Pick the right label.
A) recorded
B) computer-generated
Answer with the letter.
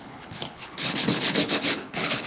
B